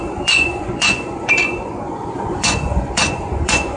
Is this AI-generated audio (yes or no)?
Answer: yes